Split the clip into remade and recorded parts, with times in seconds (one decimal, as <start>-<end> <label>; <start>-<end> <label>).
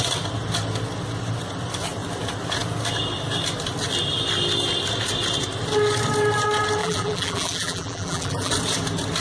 0.0-6.8 recorded; 6.8-8.5 remade; 8.5-9.2 recorded